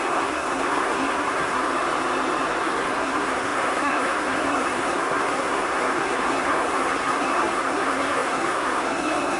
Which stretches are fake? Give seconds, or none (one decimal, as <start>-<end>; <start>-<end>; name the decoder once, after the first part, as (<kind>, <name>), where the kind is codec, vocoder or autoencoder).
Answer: 0.0-1.7 (codec, SNAC); 2.6-9.4